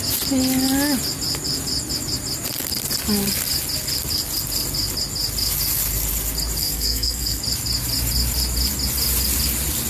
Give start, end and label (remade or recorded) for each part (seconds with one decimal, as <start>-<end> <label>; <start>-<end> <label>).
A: 0.0-6.6 recorded; 6.6-7.4 remade; 7.4-9.9 recorded